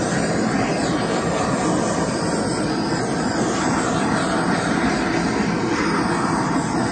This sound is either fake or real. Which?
real